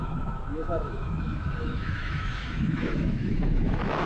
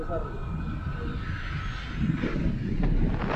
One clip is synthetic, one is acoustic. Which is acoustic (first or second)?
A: second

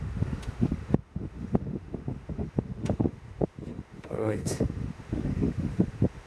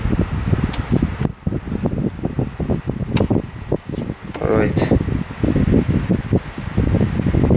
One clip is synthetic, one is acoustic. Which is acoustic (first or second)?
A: second